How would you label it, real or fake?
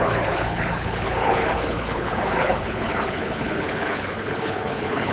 fake